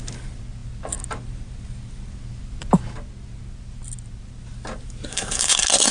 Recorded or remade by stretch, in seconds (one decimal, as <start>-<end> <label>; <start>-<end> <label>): 0.0-5.1 recorded; 5.1-5.9 remade